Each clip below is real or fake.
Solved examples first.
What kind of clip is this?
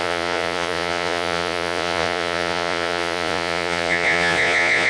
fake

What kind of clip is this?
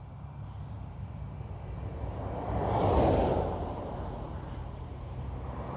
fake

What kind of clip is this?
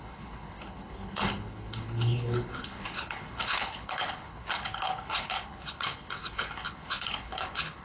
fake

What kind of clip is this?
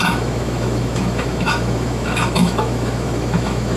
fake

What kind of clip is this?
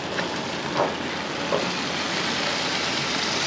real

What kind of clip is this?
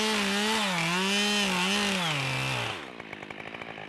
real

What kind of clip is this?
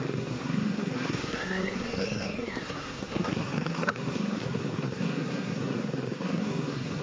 fake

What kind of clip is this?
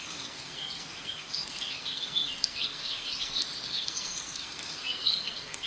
fake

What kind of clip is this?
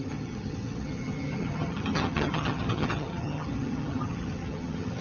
fake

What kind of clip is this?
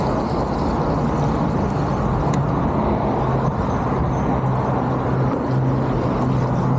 real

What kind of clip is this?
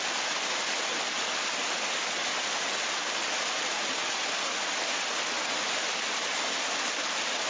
real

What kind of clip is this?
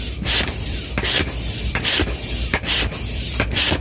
fake